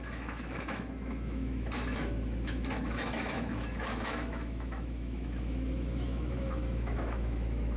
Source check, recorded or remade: remade